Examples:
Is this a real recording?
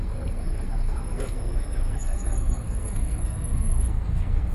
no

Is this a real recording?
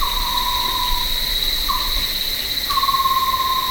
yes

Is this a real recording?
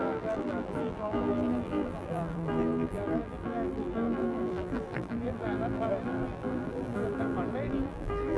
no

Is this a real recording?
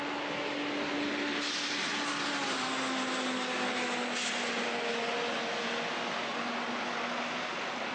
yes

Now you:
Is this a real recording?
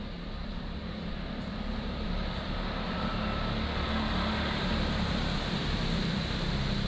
yes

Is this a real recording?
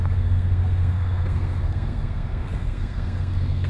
no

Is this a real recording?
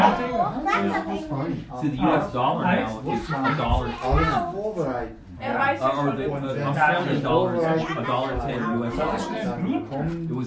yes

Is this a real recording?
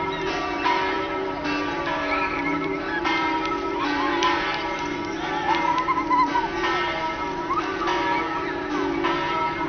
no